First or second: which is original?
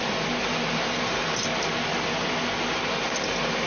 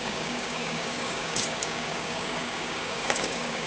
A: first